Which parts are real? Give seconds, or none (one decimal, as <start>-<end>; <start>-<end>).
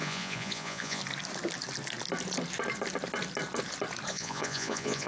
1.0-4.1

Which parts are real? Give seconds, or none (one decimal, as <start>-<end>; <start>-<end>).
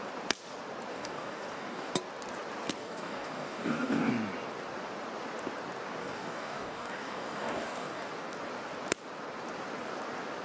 0.0-0.9; 1.9-2.8; 4.1-6.0; 8.1-10.4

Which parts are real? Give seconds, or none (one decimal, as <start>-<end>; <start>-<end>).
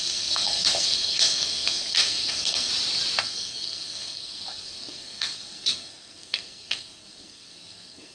2.7-3.2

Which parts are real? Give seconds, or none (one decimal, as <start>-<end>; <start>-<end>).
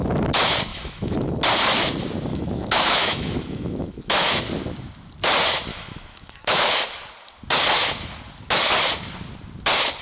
0.0-0.7; 1.3-2.3; 4.4-5.7; 7.0-10.0